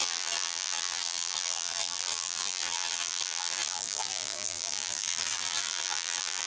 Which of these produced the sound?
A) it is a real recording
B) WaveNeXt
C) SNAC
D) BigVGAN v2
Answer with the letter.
D